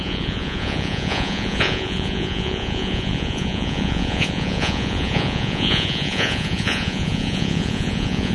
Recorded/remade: remade